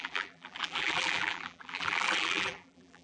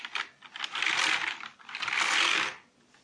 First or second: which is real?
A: second